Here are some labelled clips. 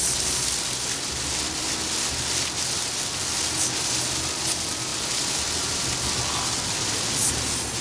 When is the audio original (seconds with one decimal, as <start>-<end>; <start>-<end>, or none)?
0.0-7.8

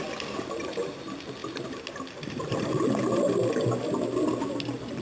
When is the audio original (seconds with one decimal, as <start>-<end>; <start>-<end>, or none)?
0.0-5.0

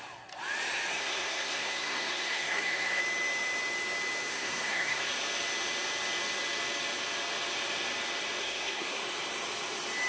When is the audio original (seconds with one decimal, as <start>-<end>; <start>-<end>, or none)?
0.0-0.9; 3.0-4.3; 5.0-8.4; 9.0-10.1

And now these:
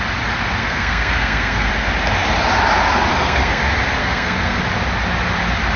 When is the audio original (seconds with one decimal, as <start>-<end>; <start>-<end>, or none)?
0.0-0.6; 1.7-3.1; 3.6-4.0; 4.6-5.8